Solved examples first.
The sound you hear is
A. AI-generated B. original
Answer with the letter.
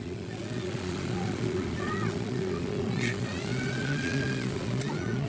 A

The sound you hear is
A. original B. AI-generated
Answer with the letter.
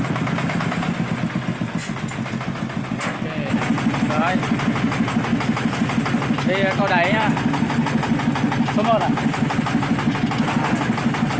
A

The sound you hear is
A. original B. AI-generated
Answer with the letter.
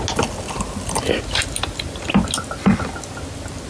A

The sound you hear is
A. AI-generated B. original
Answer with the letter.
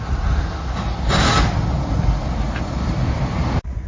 B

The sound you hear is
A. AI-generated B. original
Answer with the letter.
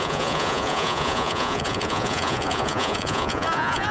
A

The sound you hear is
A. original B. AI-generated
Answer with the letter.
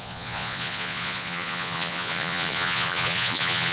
B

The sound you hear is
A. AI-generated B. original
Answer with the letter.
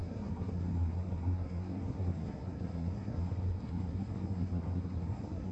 A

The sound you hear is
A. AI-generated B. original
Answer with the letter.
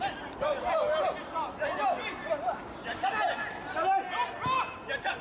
B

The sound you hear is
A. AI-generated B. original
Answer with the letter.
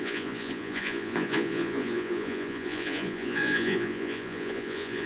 A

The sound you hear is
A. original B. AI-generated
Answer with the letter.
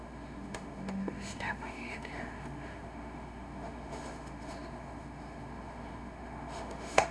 B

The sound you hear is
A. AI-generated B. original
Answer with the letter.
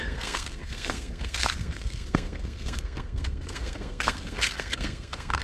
A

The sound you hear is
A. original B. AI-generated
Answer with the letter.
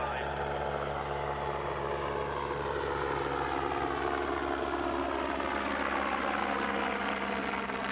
A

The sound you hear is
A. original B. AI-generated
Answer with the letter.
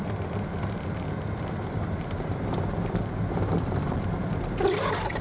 A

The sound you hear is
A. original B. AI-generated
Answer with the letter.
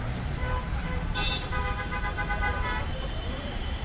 B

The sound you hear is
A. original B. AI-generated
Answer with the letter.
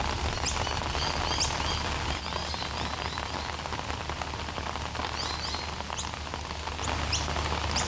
A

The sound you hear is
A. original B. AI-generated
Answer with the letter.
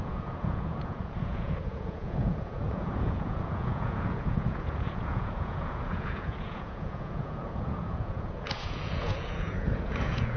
B